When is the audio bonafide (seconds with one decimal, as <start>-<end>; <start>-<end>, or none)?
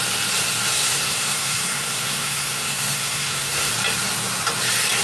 0.0-0.7; 3.7-5.0